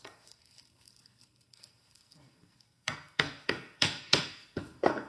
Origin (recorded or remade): remade